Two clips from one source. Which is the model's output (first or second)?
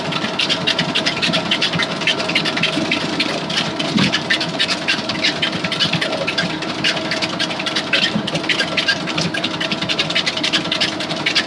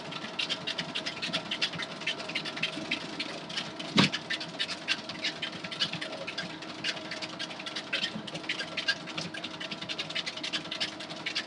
first